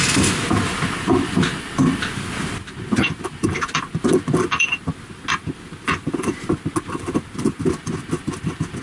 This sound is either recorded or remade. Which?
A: recorded